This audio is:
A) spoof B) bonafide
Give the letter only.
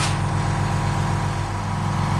B